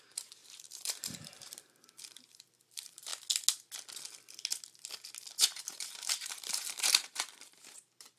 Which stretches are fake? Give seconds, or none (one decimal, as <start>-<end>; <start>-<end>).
0.0-3.1; 5.4-8.2